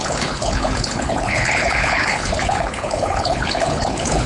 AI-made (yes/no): yes